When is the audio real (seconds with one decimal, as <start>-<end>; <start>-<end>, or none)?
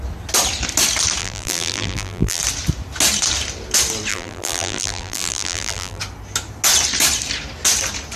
0.0-1.2; 2.4-4.1; 6.0-8.2